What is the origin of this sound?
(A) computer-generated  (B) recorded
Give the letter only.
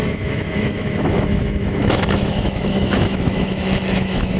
A